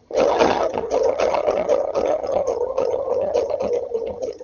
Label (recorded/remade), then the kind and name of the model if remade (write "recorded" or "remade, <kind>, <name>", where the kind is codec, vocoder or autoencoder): remade, vocoder, HiFi-GAN